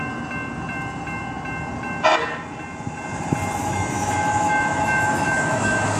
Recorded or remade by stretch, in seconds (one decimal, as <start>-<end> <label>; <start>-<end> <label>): 0.0-3.6 recorded; 3.6-6.0 remade